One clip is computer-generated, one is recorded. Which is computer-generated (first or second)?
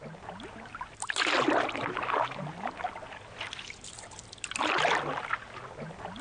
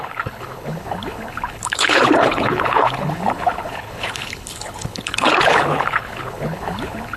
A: second